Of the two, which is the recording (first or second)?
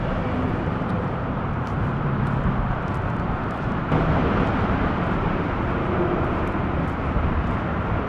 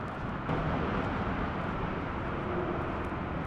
second